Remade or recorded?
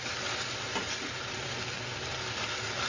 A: recorded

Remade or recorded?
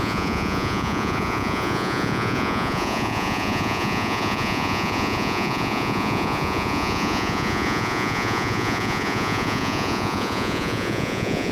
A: remade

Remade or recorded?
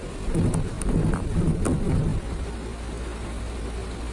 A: recorded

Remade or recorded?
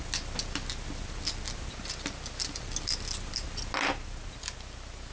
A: recorded